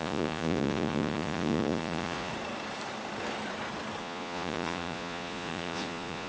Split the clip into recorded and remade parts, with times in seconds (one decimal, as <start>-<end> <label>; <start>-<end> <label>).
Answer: 0.0-2.3 remade; 2.3-4.0 recorded; 4.0-6.3 remade